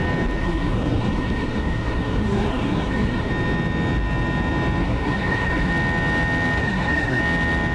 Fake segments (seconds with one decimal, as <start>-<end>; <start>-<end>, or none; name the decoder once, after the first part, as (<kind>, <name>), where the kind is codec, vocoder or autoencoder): 0.4-3.3 (codec, SNAC); 4.8-5.7; 6.6-7.2